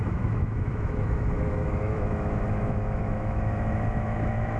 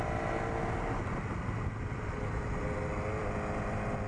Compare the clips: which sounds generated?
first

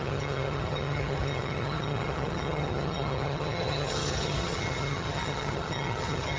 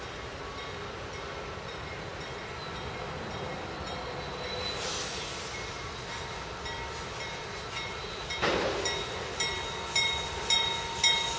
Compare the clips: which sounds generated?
first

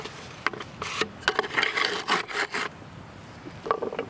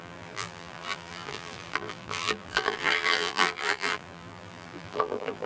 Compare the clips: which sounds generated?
second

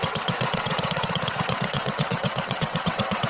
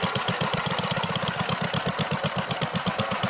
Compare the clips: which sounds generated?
first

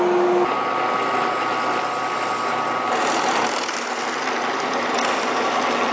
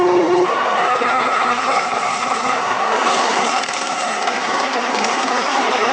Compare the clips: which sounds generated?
second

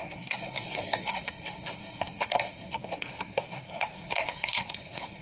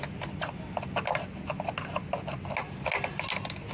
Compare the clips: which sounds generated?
first